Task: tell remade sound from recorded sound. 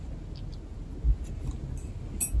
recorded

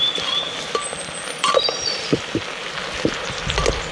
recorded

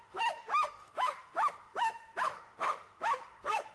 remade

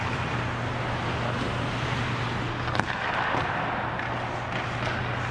recorded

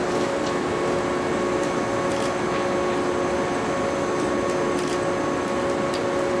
recorded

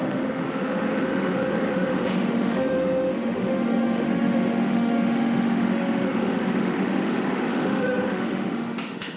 remade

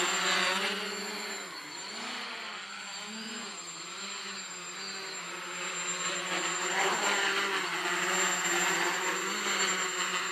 recorded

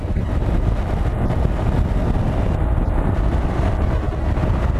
recorded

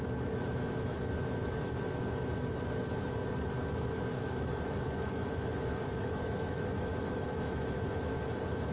remade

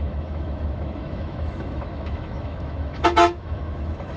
remade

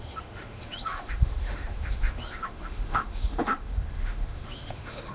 remade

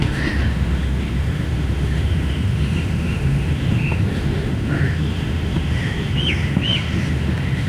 remade